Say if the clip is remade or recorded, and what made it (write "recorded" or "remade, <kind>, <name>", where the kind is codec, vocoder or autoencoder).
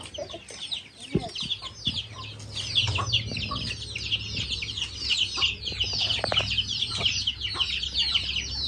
recorded